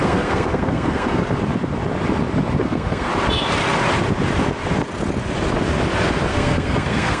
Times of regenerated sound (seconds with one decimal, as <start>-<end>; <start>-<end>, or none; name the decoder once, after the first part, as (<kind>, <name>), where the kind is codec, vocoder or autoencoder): 0.0-1.2 (codec, SNAC); 2.6-3.1; 6.3-7.2